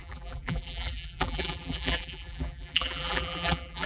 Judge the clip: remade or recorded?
remade